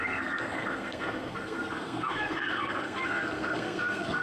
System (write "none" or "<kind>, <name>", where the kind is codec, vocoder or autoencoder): codec, SNAC